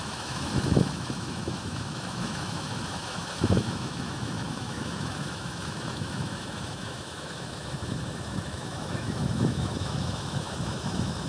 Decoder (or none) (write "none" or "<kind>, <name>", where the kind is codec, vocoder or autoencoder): autoencoder, DAC-VAE